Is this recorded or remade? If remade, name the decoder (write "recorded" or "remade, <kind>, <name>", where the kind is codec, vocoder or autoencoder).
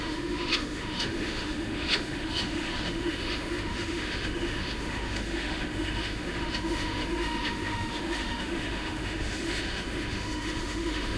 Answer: remade, autoencoder, DAC-VAE